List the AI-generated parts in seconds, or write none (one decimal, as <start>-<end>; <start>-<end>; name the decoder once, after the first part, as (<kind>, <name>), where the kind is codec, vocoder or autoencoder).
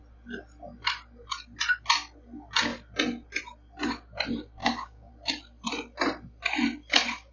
4.6-5.1 (codec, DAC)